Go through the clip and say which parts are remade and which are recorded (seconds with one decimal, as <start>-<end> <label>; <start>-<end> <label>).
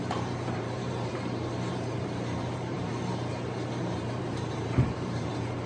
0.0-1.1 remade; 1.1-1.7 recorded; 1.7-2.9 remade; 2.9-3.8 recorded; 3.8-5.7 remade